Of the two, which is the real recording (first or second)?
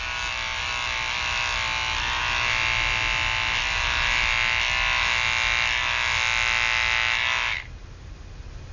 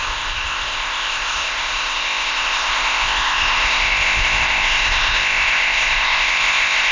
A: first